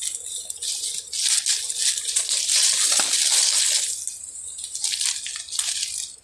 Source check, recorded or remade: recorded